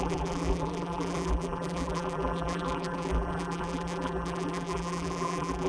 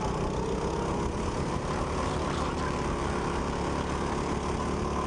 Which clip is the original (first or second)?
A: second